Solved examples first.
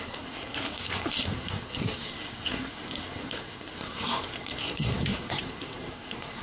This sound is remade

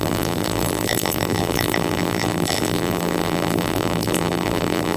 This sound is remade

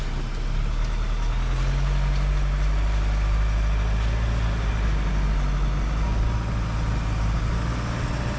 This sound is recorded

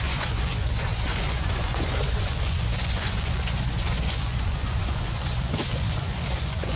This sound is remade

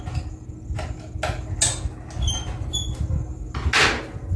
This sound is recorded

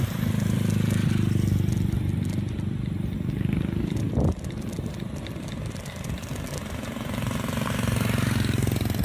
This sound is recorded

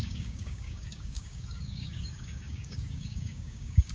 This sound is remade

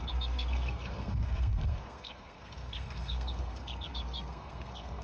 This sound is remade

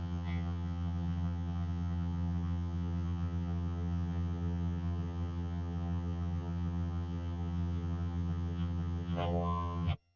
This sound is remade